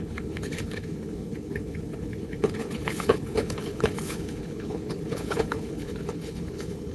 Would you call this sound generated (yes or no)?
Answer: yes